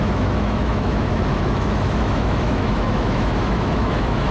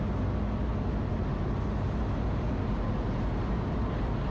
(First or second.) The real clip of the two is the second